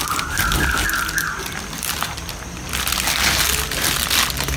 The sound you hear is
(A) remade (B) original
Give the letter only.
B